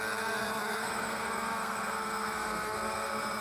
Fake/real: fake